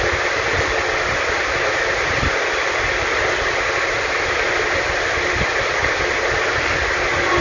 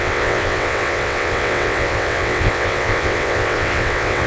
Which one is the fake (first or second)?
second